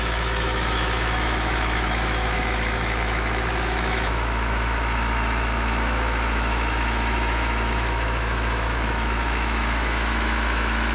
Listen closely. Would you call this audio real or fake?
fake